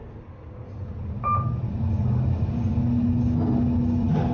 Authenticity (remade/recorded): recorded